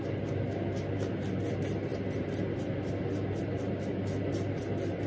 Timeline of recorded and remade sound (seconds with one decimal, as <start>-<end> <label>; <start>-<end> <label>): 0.0-5.1 recorded